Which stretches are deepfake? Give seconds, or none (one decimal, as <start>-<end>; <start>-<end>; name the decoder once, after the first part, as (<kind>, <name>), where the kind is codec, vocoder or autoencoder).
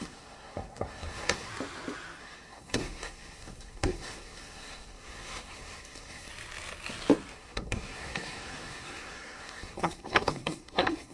0.0-1.5 (codec, SNAC); 2.2-6.3; 7.3-11.1